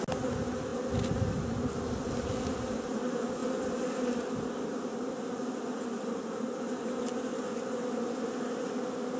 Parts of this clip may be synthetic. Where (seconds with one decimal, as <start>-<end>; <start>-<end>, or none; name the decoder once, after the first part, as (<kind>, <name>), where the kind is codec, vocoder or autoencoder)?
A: none